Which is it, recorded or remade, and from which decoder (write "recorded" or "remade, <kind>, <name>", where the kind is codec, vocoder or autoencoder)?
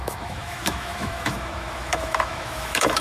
remade, autoencoder, DAC-VAE